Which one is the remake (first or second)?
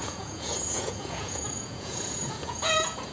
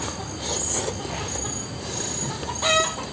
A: first